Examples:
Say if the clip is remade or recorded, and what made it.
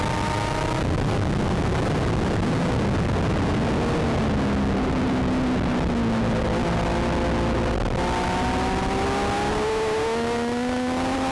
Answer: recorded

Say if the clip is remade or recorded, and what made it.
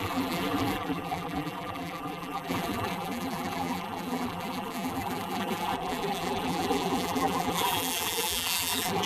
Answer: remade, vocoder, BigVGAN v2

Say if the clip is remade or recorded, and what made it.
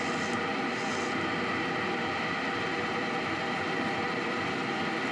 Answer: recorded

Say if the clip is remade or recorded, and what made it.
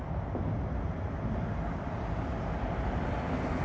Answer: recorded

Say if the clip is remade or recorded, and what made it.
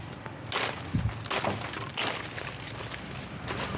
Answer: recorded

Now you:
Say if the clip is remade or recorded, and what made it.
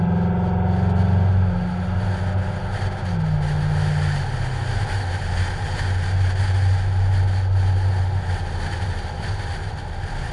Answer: recorded